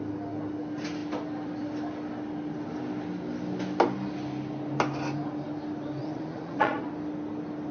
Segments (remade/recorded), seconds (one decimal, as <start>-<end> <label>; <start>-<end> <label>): 0.0-6.0 recorded; 6.0-6.9 remade; 6.9-7.7 recorded